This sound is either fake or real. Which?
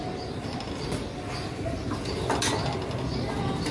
real